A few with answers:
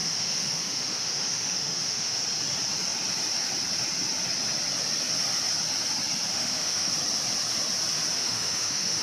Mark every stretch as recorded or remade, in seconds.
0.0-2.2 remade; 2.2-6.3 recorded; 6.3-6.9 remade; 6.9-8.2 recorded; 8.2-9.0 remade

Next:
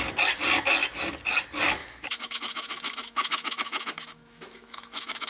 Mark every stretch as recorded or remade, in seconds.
0.0-1.8 recorded; 1.8-5.3 remade

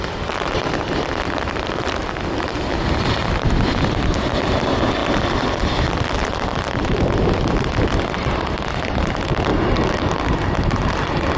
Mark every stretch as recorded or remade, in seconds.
0.0-11.4 recorded

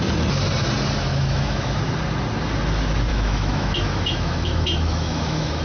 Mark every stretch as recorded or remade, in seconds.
0.0-1.1 recorded; 1.1-1.8 remade; 1.8-3.1 recorded; 3.1-5.6 remade

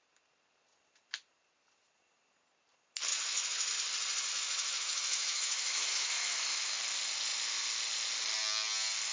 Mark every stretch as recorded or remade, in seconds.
0.0-3.1 recorded; 3.1-3.7 remade; 3.7-4.3 recorded; 4.3-6.8 remade; 6.8-9.1 recorded